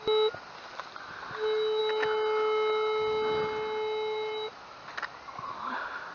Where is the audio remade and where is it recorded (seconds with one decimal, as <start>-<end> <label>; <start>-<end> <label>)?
0.0-6.1 recorded